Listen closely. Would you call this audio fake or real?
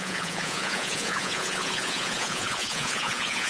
fake